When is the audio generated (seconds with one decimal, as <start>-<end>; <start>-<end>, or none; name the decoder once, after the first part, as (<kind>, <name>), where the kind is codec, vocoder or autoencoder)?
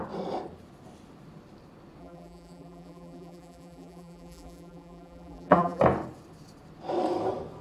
2.0-5.8 (vocoder, BigVGAN v2)